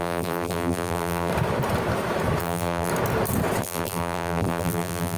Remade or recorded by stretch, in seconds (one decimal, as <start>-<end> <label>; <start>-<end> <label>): 0.0-1.3 remade; 1.3-2.4 recorded; 2.4-2.9 remade; 2.9-3.6 recorded; 3.6-5.2 remade